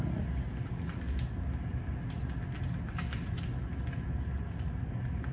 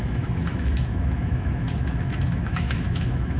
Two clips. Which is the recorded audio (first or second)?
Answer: first